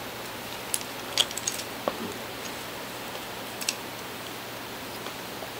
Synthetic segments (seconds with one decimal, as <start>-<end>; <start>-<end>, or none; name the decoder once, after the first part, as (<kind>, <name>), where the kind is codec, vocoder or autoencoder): 1.2-4.2 (vocoder, BigVGAN v2)